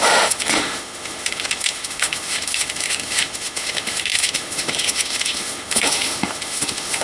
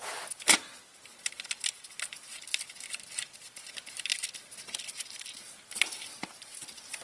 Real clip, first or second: second